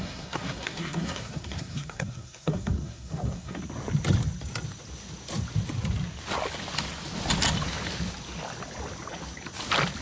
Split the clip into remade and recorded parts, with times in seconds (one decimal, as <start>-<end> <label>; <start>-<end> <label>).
0.0-3.6 remade; 3.6-10.0 recorded